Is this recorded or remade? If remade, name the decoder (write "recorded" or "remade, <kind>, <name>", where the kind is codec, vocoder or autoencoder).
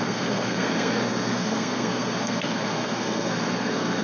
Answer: remade, codec, SNAC